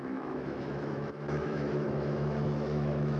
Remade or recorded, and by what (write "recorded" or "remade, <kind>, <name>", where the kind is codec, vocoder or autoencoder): remade, autoencoder, DAC-VAE